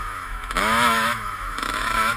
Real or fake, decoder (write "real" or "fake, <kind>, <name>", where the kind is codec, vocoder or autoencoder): fake, autoencoder, DAC-VAE